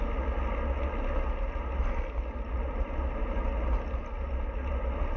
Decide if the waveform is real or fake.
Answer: real